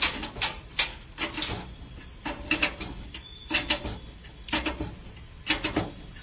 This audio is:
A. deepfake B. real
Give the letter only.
B